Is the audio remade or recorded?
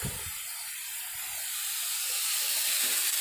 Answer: recorded